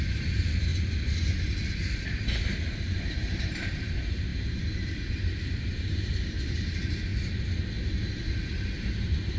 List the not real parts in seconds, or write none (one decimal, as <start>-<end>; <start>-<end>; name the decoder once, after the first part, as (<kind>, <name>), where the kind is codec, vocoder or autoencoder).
0.0-0.7 (vocoder, BigVGAN v2); 2.8-7.1; 8.4-9.4